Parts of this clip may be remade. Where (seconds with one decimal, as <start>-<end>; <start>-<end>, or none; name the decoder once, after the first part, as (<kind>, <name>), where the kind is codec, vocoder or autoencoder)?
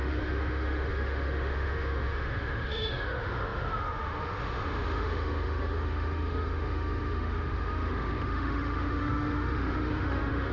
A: 0.0-10.5 (autoencoder, DAC-VAE)